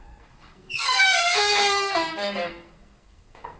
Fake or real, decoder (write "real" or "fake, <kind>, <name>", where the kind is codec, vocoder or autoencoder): fake, codec, SNAC